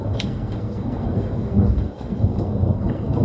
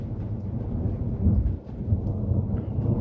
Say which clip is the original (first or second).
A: second